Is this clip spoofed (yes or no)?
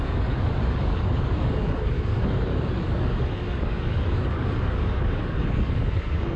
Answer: yes